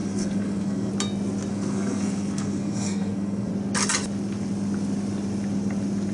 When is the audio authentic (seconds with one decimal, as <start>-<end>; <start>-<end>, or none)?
0.9-1.5; 3.5-6.1